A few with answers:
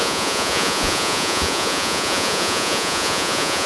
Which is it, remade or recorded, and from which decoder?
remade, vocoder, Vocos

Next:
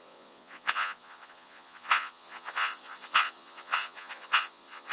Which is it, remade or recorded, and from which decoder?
remade, vocoder, Vocos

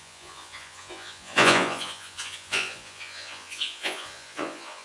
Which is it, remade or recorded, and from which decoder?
remade, vocoder, Vocos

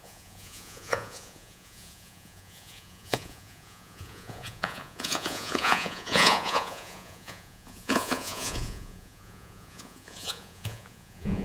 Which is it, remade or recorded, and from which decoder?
remade, vocoder, Vocos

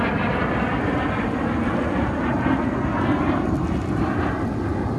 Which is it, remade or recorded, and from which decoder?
recorded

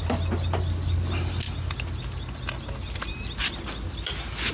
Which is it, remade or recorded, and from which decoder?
recorded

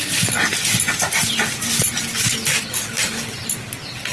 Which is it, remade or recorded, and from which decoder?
recorded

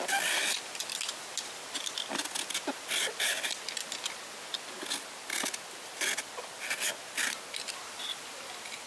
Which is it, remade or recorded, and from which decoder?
recorded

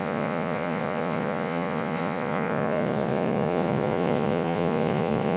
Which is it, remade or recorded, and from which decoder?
remade, vocoder, Vocos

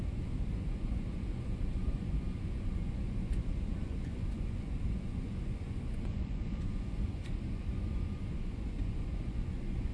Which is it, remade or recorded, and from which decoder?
remade, vocoder, Vocos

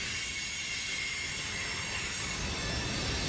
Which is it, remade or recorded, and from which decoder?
recorded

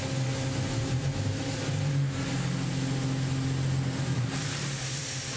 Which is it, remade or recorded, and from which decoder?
recorded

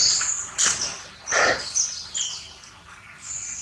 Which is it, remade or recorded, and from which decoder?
recorded